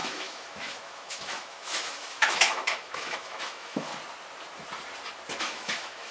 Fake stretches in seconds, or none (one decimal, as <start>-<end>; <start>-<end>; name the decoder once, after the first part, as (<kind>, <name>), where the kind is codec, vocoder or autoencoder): 0.0-3.9 (autoencoder, DAC-VAE); 5.4-6.1